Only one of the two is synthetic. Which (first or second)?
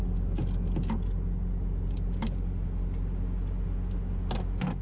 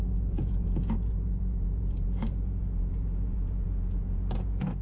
second